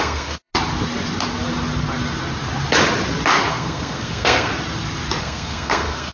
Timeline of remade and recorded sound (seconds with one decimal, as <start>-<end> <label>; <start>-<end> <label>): 0.0-0.5 remade; 0.5-3.5 recorded; 3.5-4.5 remade; 4.5-5.2 recorded; 5.2-6.1 remade